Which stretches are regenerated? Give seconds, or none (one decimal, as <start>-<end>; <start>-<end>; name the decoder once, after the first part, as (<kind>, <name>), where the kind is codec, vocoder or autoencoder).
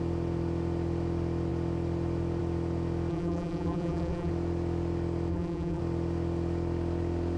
3.1-4.3 (vocoder, BigVGAN v2); 5.3-5.8